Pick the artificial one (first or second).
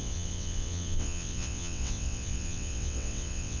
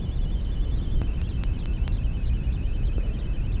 first